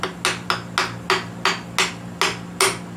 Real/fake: real